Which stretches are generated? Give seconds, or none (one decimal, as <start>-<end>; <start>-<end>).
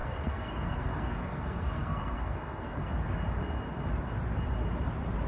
0.0-2.9